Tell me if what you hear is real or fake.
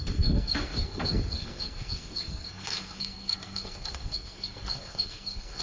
fake